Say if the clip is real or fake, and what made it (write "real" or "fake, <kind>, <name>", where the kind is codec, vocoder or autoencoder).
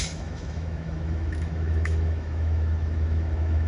fake, autoencoder, DAC-VAE